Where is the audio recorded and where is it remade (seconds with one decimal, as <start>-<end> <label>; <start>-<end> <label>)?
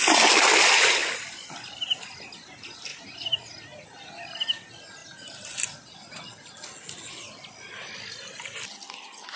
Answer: 0.0-1.0 recorded; 1.0-1.8 remade; 1.8-2.9 recorded; 2.9-3.5 remade; 3.5-5.0 recorded; 5.0-6.1 remade; 6.1-9.4 recorded